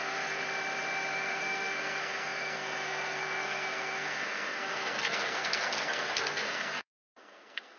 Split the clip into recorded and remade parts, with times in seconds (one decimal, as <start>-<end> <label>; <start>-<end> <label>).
0.0-0.4 remade; 0.4-1.1 recorded; 1.1-7.8 remade